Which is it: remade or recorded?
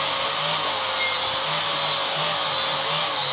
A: recorded